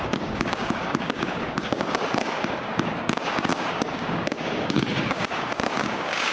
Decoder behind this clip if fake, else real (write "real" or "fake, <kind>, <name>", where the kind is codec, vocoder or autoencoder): fake, codec, DAC